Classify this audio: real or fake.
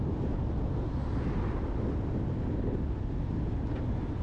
real